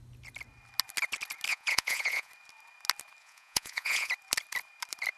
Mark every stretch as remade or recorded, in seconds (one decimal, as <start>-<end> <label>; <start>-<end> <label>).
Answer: 0.0-1.5 recorded; 1.5-2.3 remade; 2.3-3.2 recorded; 3.2-4.1 remade; 4.1-5.2 recorded